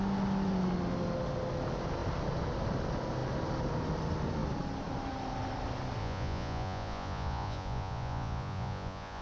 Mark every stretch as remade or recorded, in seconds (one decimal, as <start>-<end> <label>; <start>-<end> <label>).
0.0-6.0 recorded; 6.0-9.2 remade